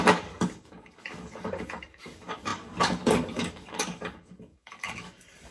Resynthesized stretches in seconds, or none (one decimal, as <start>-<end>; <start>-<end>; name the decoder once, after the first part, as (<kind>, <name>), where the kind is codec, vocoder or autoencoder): 0.0-5.5 (codec, DAC)